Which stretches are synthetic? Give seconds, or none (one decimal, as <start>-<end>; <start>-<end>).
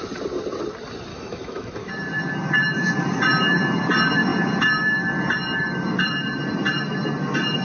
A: 1.1-1.9